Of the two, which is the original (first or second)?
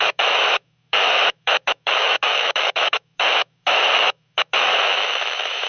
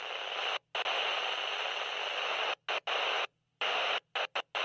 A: second